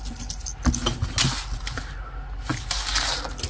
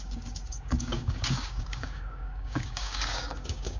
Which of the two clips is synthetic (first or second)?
second